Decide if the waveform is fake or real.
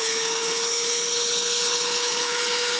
fake